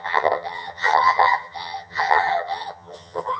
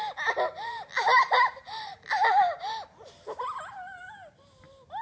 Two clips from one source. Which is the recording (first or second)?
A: second